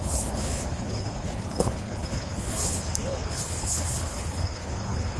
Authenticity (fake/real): fake